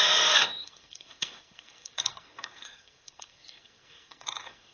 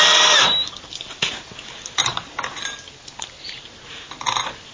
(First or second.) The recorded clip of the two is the second